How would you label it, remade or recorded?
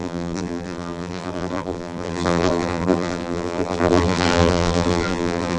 remade